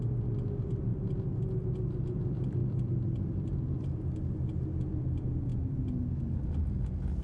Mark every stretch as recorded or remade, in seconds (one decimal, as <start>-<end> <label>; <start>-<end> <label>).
0.0-7.2 recorded